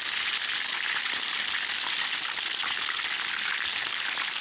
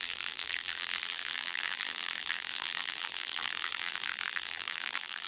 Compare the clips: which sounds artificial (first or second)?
second